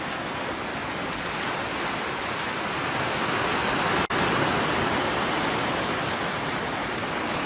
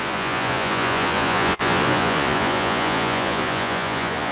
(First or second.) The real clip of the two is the first